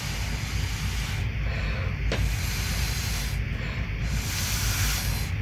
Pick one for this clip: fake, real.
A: real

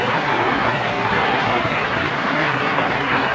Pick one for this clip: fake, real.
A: fake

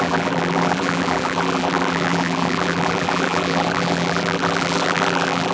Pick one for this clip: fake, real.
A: fake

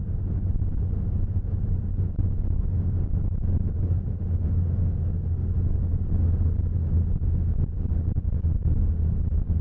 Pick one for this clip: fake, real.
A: real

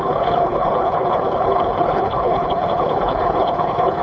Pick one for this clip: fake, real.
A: fake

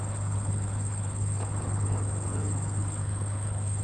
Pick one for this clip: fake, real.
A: fake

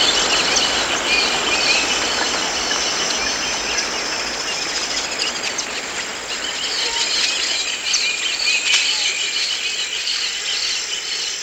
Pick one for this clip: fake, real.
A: real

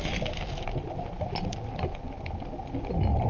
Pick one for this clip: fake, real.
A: real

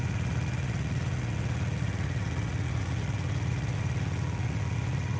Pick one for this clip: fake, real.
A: fake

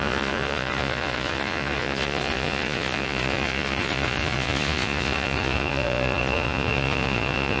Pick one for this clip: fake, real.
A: fake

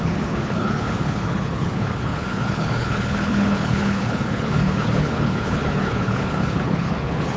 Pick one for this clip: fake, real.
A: fake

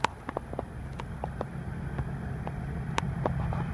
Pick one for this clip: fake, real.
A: real